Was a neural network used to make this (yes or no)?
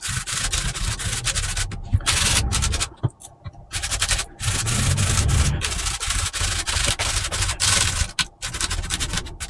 no